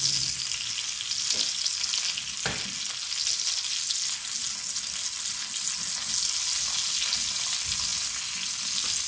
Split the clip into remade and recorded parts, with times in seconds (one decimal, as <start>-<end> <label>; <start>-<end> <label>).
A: 0.0-9.1 recorded